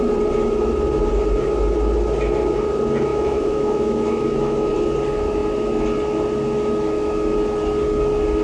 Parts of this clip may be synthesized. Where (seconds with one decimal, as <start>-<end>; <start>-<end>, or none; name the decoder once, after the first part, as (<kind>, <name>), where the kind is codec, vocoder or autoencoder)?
3.1-4.7 (autoencoder, DAC-VAE)